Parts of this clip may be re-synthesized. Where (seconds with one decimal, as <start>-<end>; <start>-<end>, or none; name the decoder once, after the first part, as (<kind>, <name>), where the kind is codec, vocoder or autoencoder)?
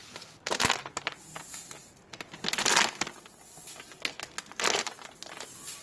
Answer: none